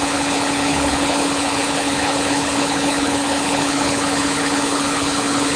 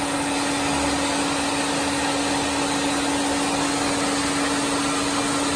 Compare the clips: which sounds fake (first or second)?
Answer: first